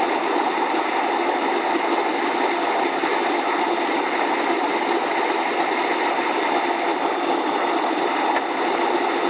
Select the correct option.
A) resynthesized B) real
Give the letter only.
B